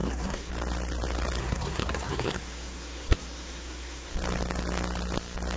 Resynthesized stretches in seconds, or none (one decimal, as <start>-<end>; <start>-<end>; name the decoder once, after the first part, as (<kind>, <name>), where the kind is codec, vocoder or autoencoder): 0.0-0.5 (codec, SNAC); 1.4-4.1